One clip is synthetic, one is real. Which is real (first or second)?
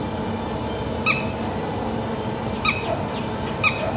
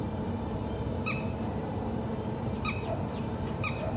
first